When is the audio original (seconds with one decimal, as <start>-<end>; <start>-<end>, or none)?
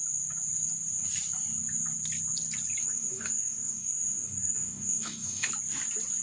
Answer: 0.0-2.8; 5.5-6.2